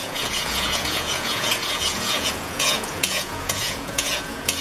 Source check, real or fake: fake